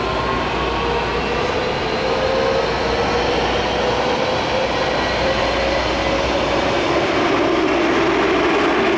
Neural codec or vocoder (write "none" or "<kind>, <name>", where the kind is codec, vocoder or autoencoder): none